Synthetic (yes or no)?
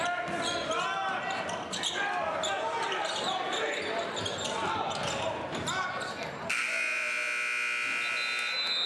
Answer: no